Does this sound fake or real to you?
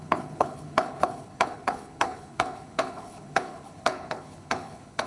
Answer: fake